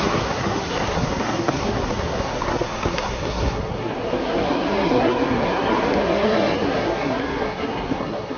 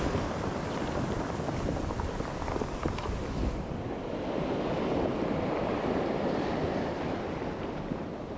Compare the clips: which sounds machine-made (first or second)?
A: first